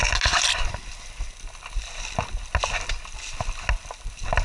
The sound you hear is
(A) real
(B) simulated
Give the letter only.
A